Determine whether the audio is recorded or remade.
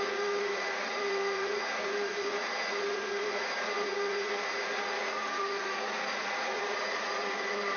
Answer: remade